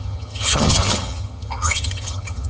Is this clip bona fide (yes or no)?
no